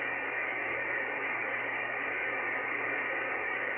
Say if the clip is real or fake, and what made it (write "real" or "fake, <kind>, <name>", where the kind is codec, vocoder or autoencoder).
fake, codec, DAC